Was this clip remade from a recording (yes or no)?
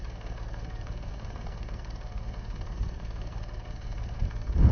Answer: yes